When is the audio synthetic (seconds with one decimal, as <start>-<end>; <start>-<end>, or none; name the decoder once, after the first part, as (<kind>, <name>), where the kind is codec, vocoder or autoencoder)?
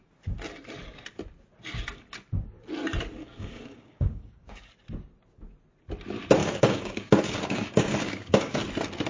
3.2-4.7 (codec, DAC); 6.4-8.6